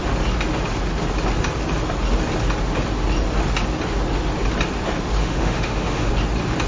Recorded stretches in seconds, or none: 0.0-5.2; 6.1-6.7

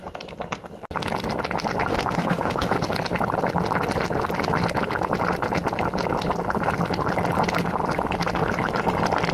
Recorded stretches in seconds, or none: 0.0-1.9; 2.7-9.3

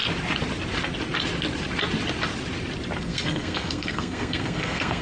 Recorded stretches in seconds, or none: 0.0-3.0

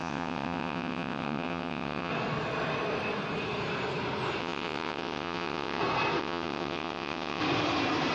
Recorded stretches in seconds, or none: 2.1-4.4; 5.8-6.2; 7.4-8.1

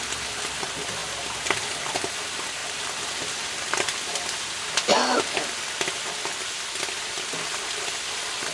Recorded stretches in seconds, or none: 0.0-8.5